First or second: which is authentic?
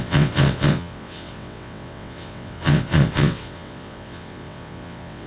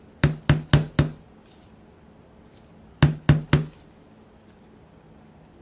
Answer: second